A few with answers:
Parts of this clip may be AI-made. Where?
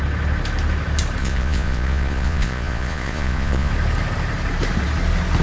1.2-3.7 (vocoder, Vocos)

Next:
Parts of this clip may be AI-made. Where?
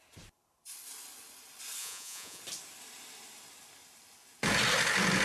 1.8-2.4 (vocoder, Vocos)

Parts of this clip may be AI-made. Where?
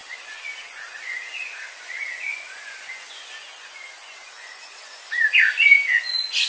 0.0-6.5 (vocoder, Vocos)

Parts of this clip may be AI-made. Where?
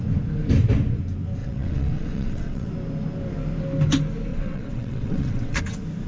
1.4-2.7 (vocoder, WaveNeXt); 4.3-5.6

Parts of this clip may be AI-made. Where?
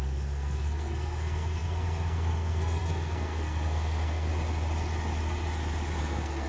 0.0-4.3 (codec, SNAC); 6.0-6.5